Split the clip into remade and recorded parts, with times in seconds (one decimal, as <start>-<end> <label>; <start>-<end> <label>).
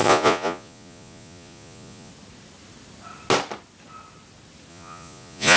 0.0-2.1 remade; 2.1-4.7 recorded; 4.7-5.6 remade